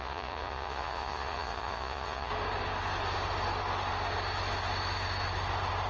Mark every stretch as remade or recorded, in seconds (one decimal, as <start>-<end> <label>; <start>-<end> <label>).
0.0-2.3 remade; 2.3-5.9 recorded